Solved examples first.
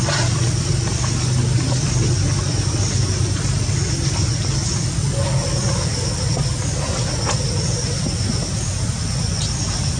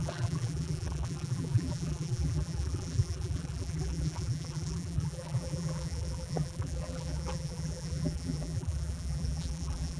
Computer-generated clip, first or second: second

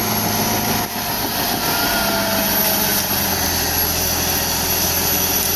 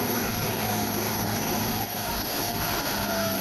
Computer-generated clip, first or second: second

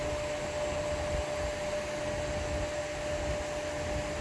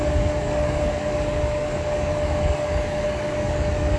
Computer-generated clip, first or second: second